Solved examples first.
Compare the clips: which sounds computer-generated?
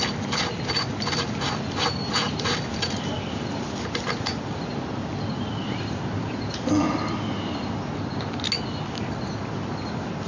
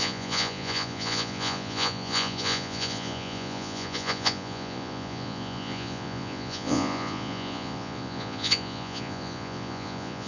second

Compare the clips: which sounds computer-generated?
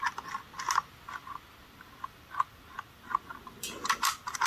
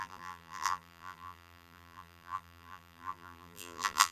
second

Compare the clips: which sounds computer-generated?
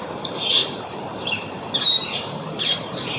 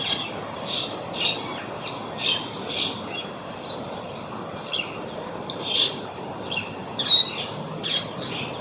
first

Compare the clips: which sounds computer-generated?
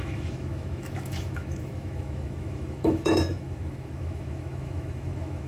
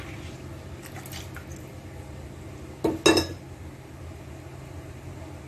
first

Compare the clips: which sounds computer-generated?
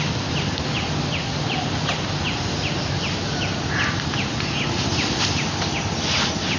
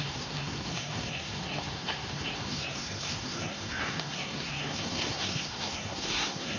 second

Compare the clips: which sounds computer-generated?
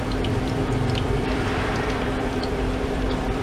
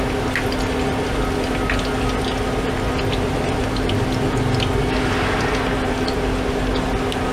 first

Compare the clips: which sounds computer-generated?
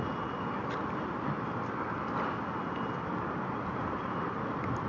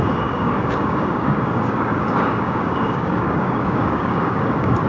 second